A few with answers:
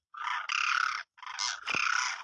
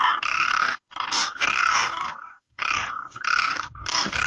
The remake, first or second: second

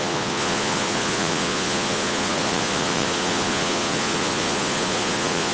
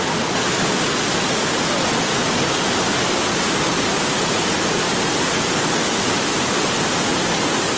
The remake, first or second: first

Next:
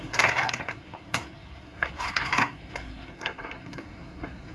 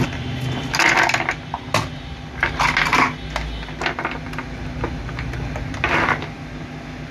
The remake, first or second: first